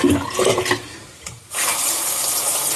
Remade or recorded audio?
recorded